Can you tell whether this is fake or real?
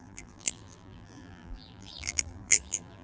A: fake